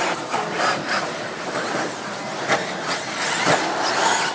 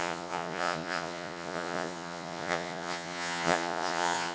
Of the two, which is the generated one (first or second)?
second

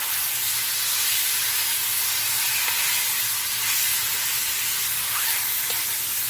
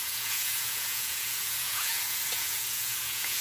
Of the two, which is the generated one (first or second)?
second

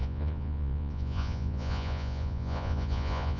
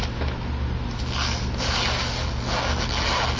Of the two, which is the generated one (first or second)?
first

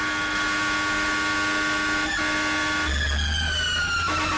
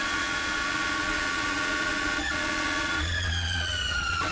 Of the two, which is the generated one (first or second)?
second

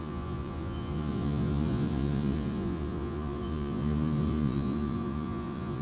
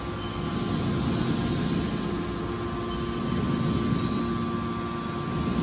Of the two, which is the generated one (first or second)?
first